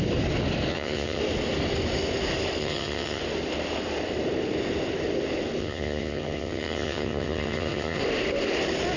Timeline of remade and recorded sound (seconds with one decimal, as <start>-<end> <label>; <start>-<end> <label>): 0.0-0.7 recorded; 0.7-1.2 remade; 1.2-2.6 recorded; 2.6-3.2 remade; 3.2-5.6 recorded; 5.6-8.0 remade; 8.0-9.0 recorded